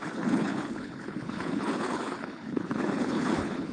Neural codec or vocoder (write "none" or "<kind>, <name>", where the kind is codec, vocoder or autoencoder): codec, HILCodec